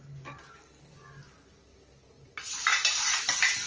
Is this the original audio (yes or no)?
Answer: yes